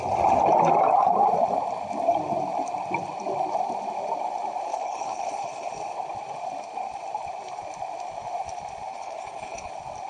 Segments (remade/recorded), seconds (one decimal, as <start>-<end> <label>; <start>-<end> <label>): 0.0-4.7 recorded; 4.7-5.7 remade; 5.7-8.9 recorded; 8.9-9.7 remade; 9.7-10.1 recorded